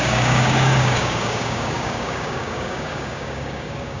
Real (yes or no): no